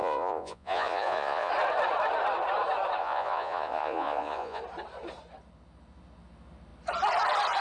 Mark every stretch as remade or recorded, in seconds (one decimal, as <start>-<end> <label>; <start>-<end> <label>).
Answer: 0.0-1.5 remade; 1.5-3.0 recorded; 3.0-4.6 remade; 4.6-7.6 recorded